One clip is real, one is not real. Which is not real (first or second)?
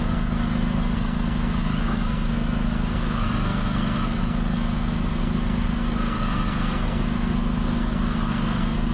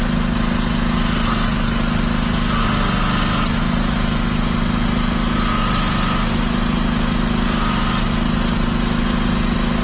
first